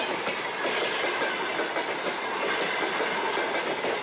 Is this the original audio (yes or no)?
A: yes